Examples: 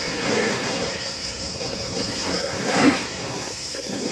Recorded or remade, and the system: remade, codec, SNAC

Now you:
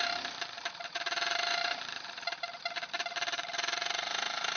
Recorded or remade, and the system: remade, vocoder, BigVGAN v2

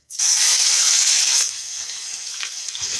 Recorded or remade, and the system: remade, codec, SNAC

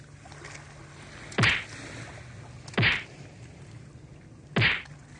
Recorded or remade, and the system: recorded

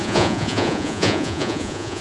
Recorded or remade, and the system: remade, vocoder, Vocos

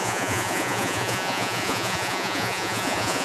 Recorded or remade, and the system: remade, vocoder, Vocos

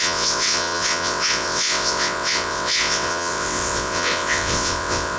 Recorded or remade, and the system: remade, vocoder, WaveNeXt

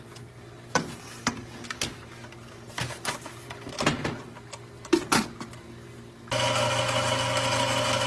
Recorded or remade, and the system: recorded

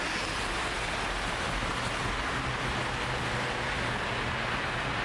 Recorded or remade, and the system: recorded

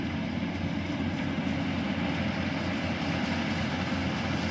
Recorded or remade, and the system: recorded